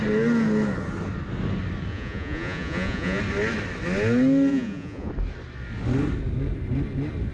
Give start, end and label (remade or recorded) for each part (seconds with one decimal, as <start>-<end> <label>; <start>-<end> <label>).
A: 0.0-1.9 recorded; 1.9-3.2 remade; 3.2-4.5 recorded; 4.5-5.1 remade; 5.1-7.3 recorded